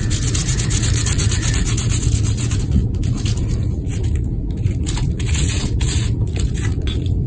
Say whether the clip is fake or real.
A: fake